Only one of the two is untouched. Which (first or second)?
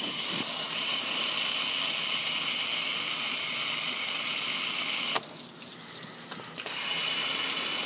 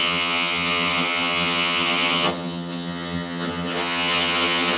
first